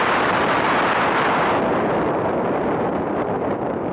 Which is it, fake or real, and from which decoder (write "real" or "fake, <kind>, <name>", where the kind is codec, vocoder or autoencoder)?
real